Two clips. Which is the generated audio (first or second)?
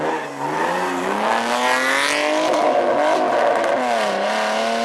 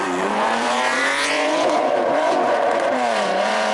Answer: second